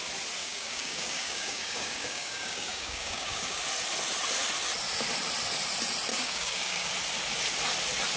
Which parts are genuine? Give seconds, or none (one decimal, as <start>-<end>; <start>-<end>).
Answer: 0.0-0.4; 3.6-6.1; 6.9-8.2